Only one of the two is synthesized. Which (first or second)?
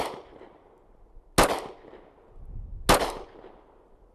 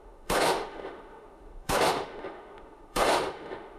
second